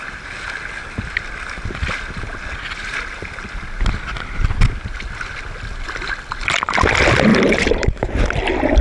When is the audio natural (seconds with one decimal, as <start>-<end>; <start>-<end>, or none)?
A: 0.0-7.3; 8.1-8.8